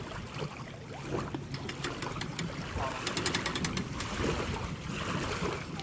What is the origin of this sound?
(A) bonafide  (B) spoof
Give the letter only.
A